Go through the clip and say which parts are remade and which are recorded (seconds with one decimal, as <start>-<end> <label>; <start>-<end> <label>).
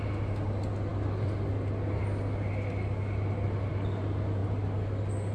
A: 0.0-5.3 recorded